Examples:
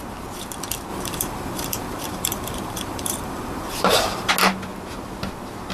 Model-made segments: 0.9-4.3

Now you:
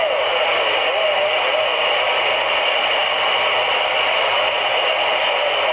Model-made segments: 1.7-2.4; 3.0-4.9

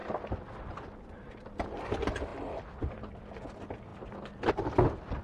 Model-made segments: 0.0-1.8; 2.3-3.1